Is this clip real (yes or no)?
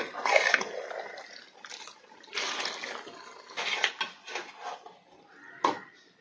yes